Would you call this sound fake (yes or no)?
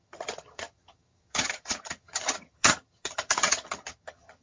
yes